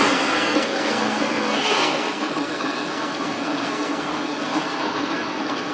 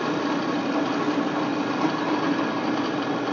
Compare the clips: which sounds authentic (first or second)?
second